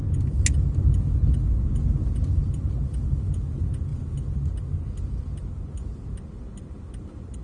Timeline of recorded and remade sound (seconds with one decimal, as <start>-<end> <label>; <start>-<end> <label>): 0.0-7.4 recorded